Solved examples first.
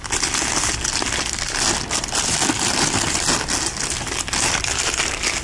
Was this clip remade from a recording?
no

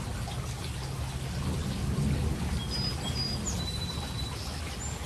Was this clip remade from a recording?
no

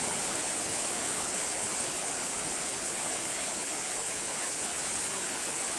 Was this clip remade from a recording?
yes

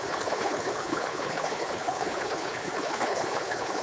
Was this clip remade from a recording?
yes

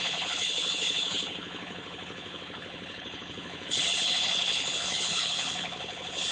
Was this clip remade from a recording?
yes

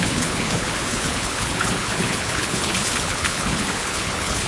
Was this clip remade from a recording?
yes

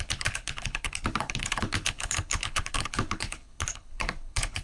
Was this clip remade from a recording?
yes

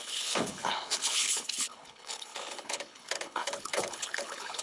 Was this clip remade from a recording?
yes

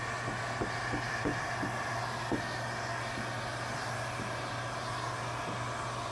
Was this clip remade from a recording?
no